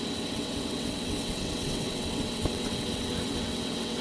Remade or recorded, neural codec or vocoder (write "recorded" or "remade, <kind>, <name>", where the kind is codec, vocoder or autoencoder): remade, vocoder, WaveNeXt